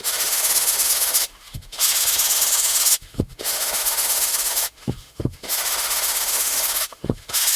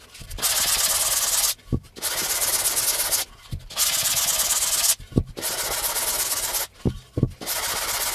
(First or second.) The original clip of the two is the second